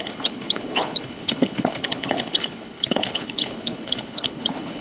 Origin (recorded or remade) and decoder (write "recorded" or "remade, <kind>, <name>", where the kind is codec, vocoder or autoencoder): remade, codec, HILCodec